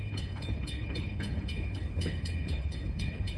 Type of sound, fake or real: fake